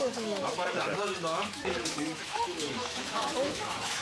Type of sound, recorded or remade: remade